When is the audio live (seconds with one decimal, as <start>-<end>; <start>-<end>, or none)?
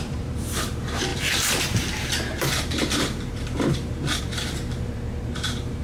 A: none